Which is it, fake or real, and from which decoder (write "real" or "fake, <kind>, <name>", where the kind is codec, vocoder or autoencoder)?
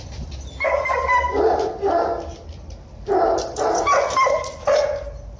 real